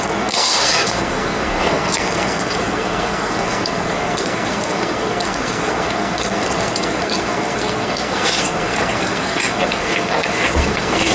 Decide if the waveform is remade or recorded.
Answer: remade